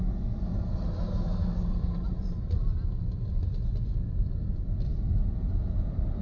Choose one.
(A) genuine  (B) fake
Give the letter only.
A